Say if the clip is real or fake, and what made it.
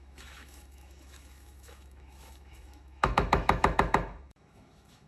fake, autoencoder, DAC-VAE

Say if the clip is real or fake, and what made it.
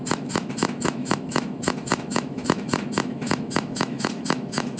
fake, autoencoder, DAC-VAE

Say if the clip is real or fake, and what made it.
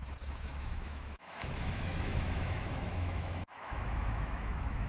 fake, autoencoder, DAC-VAE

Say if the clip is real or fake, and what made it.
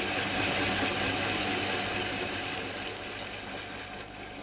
real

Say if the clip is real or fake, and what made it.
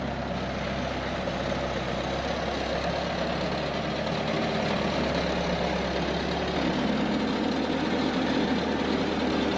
real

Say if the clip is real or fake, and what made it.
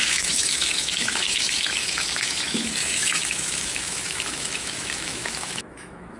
fake, autoencoder, DAC-VAE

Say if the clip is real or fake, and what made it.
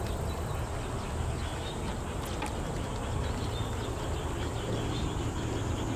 real